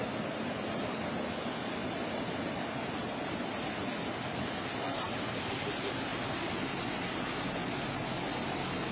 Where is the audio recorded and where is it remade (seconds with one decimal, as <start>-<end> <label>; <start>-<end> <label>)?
0.0-1.8 recorded; 1.8-2.3 remade; 2.3-8.9 recorded

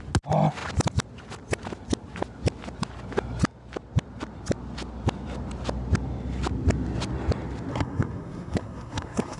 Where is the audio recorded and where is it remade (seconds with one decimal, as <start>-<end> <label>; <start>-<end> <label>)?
0.0-7.7 recorded; 7.7-9.4 remade

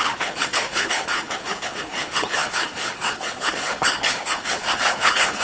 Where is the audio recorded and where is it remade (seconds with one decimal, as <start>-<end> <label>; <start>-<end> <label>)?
0.0-5.4 remade